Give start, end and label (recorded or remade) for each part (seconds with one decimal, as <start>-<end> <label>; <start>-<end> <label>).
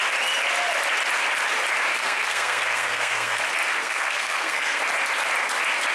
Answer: 0.0-1.9 recorded; 1.9-3.4 remade; 3.4-3.8 recorded; 3.8-4.8 remade; 4.8-5.9 recorded